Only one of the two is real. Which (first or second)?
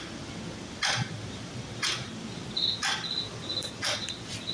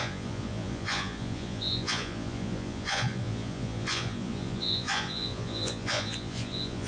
first